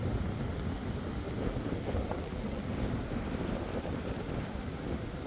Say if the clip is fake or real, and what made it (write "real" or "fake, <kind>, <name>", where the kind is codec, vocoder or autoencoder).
real